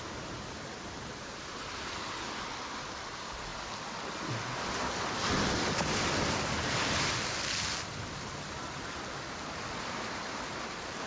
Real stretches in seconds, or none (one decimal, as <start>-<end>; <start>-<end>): 0.0-11.1